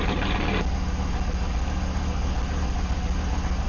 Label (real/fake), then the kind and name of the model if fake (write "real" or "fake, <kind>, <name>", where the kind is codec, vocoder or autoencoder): real